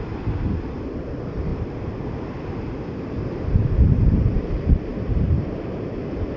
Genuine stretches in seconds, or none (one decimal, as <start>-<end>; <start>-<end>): 1.5-2.1

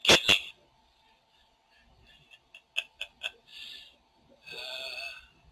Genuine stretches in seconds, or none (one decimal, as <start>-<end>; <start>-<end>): 0.0-3.5; 4.1-5.5

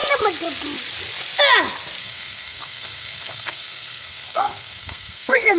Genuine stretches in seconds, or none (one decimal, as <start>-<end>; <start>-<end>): 0.0-2.0

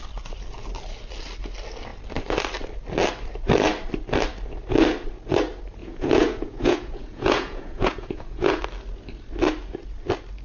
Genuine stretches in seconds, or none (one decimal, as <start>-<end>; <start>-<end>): 0.0-5.8; 8.6-10.4

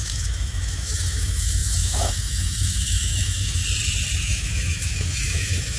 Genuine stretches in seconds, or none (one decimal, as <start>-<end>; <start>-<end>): 3.6-4.2

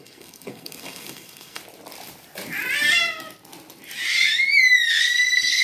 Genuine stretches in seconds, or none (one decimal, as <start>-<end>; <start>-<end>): 1.6-5.0